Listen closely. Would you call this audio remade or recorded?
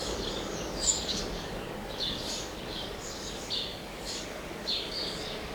remade